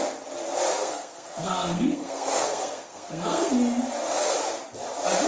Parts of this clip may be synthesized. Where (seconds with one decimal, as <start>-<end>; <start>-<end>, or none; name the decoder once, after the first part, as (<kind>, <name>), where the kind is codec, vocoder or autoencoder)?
0.8-3.5 (codec, SNAC)